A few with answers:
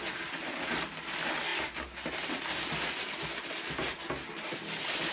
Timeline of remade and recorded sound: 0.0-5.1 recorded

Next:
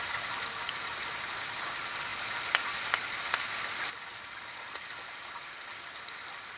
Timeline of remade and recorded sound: 0.0-6.6 recorded

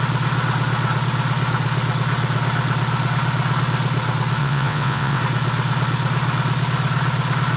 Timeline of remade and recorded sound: 0.0-4.4 recorded; 4.4-5.2 remade; 5.2-7.6 recorded